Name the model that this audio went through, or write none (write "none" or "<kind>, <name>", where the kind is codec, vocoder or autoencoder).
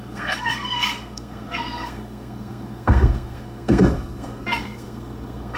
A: codec, SNAC